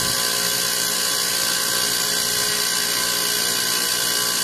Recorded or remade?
recorded